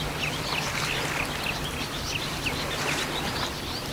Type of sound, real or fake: real